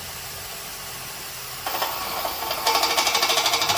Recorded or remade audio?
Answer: recorded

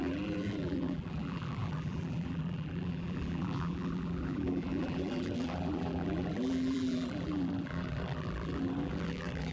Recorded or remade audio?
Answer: remade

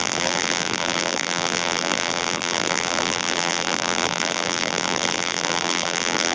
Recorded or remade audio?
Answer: remade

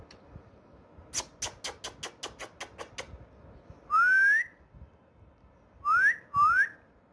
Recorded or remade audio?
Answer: recorded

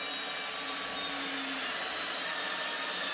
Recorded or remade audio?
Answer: recorded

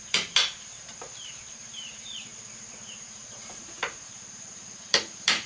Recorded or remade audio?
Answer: remade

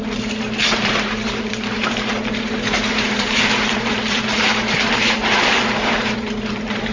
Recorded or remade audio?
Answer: remade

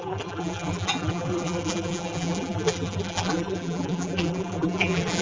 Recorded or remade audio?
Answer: remade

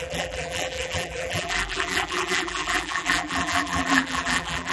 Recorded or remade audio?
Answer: remade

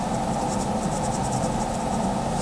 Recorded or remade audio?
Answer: recorded